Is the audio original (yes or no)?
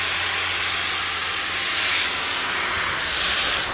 yes